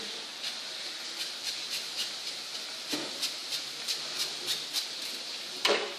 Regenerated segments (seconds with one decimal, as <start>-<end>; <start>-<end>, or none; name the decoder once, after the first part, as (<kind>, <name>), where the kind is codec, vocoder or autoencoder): none